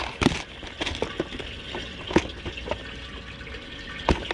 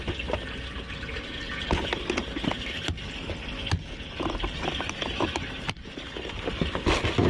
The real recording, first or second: first